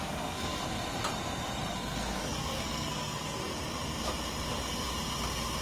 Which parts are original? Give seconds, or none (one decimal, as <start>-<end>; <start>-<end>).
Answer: 0.6-1.7; 3.5-5.6